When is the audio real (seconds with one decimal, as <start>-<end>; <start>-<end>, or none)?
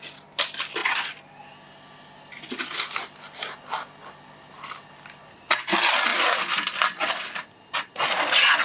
0.0-8.6